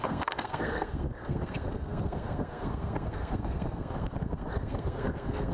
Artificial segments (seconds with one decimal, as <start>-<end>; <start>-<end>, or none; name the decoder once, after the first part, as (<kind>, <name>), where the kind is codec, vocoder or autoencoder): 0.0-5.5 (codec, SNAC)